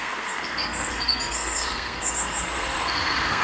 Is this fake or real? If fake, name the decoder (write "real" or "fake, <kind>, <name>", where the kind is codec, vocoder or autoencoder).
fake, codec, SNAC